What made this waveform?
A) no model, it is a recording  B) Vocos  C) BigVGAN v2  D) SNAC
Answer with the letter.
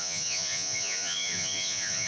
B